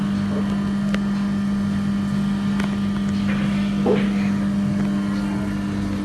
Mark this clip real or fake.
real